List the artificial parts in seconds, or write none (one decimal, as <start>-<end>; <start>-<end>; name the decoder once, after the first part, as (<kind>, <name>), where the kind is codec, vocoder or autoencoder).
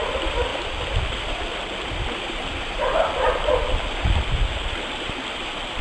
0.0-5.8 (vocoder, BigVGAN v2)